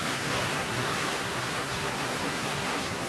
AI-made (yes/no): yes